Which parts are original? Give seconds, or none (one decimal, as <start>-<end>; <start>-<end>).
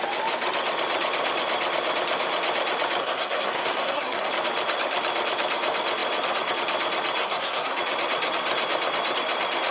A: 0.0-3.0; 4.3-7.2; 7.8-9.7